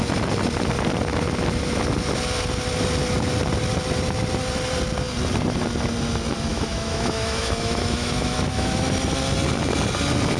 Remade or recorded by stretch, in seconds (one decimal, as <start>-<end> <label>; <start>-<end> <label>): 0.0-6.5 recorded; 6.5-8.8 remade; 8.8-10.4 recorded